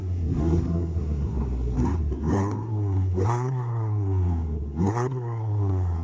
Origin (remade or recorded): remade